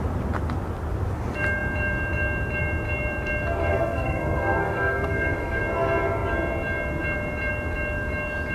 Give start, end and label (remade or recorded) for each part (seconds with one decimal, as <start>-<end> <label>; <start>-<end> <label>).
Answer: 0.0-3.7 recorded; 3.7-5.6 remade; 5.6-8.5 recorded